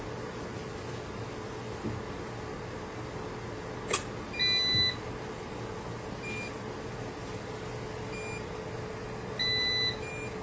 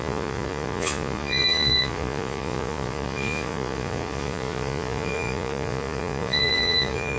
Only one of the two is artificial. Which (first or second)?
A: second